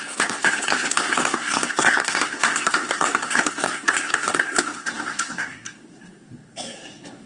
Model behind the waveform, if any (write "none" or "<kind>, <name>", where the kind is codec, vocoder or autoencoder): codec, SNAC